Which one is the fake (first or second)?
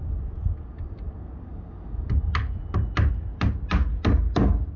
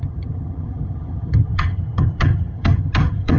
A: second